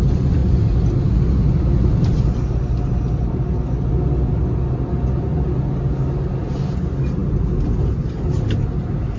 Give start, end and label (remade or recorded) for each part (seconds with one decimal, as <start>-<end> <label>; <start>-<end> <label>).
0.0-9.2 recorded